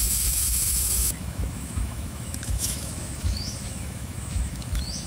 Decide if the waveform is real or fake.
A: fake